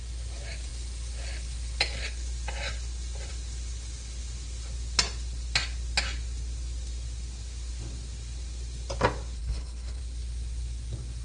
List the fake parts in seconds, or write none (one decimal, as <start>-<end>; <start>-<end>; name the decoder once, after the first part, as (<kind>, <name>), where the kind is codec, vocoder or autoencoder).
9.4-10.0 (codec, HILCodec)